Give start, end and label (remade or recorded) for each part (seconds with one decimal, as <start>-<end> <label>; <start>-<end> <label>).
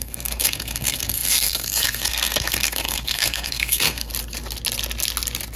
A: 0.0-4.1 remade; 4.1-5.6 recorded